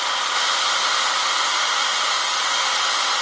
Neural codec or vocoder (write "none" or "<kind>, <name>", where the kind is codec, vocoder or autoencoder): none